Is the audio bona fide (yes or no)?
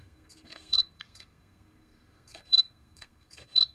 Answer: no